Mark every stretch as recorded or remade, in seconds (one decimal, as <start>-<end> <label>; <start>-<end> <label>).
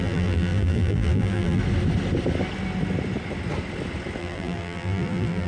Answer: 0.0-1.6 remade; 1.6-4.2 recorded; 4.2-5.5 remade